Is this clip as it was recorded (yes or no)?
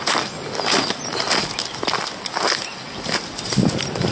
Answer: yes